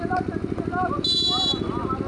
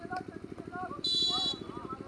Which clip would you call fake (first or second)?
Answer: second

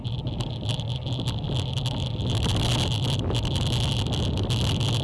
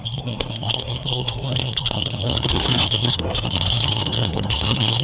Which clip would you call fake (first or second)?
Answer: second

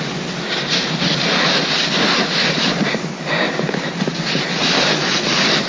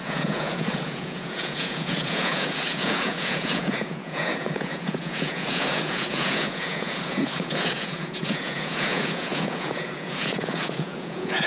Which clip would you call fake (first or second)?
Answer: second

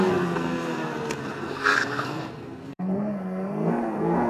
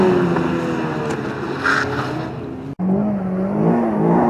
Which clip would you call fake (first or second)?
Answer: first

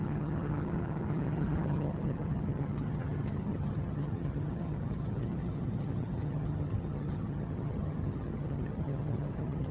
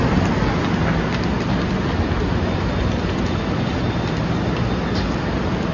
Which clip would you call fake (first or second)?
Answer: first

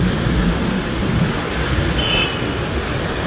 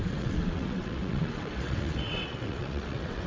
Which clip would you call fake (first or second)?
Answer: second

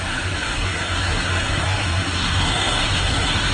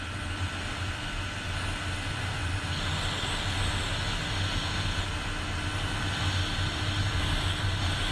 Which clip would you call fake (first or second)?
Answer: first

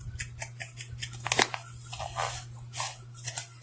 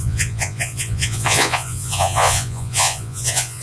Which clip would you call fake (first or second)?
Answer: second